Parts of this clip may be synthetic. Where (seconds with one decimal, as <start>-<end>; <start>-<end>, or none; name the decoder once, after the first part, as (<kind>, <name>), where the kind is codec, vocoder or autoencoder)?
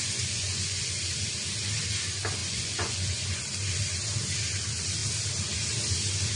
0.0-1.0 (vocoder, Vocos); 2.4-3.4